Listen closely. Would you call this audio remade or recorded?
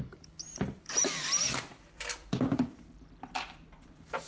remade